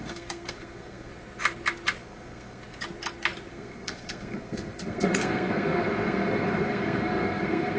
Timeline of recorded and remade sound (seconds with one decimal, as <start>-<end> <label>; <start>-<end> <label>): 0.0-1.1 remade; 1.1-2.0 recorded; 2.0-2.6 remade; 2.6-3.5 recorded; 3.5-7.8 remade